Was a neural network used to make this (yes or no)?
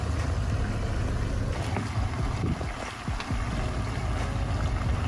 no